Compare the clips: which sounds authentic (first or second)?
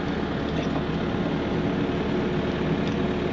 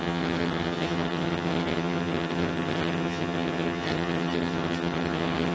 first